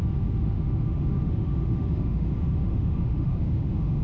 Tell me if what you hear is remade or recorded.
remade